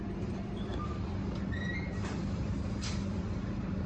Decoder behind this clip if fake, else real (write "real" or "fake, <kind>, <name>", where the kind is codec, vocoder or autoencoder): fake, vocoder, BigVGAN v2